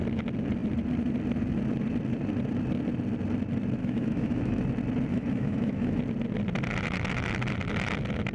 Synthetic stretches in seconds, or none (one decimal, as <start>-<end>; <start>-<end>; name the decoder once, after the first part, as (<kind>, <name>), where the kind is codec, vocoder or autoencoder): 3.8-4.6 (autoencoder, DAC-VAE); 5.1-6.0